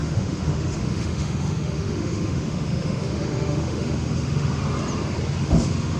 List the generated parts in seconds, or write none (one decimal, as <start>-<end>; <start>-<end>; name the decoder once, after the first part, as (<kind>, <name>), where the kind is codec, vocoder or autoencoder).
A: 0.0-4.6 (autoencoder, DAC-VAE); 5.4-6.0